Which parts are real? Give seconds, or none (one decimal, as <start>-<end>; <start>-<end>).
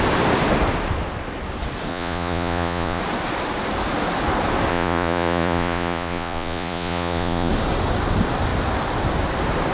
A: 0.0-1.9; 3.0-4.7; 7.5-9.7